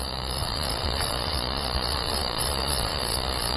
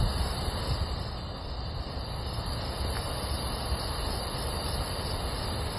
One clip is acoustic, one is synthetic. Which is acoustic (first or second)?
second